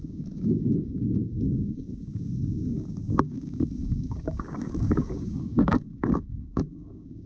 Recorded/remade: remade